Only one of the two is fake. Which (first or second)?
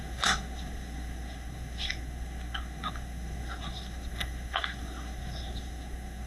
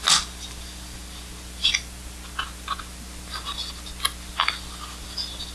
first